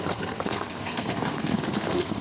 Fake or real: fake